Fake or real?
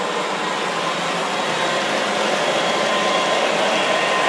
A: real